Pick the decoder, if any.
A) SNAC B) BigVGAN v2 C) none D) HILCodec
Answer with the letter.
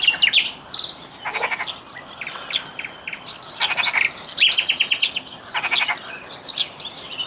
C